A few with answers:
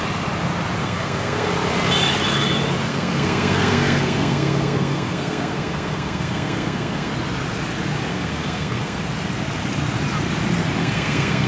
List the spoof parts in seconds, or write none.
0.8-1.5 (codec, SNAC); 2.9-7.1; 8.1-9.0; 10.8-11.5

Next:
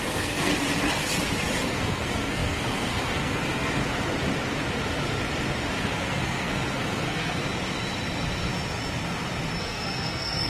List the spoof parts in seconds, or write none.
0.0-0.5 (codec, SNAC); 1.7-3.8; 5.8-7.4; 9.6-10.5

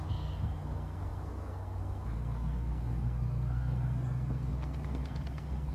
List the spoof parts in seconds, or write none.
0.0-5.7 (codec, SNAC)